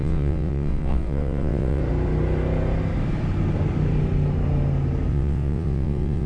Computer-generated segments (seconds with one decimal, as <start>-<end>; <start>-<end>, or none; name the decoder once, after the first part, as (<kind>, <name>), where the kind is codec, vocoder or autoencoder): 0.0-1.8 (vocoder, WaveNeXt); 5.1-6.3